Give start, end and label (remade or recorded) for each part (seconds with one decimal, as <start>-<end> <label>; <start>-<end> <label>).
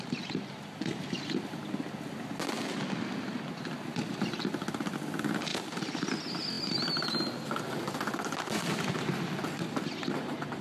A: 0.0-5.5 recorded; 5.5-6.2 remade; 6.2-10.6 recorded